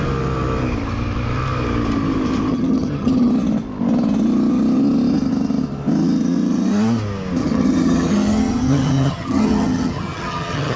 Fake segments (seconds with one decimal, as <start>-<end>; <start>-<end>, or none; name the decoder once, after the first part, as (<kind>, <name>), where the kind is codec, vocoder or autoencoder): 2.5-3.3 (vocoder, HiFi-GAN); 7.4-10.8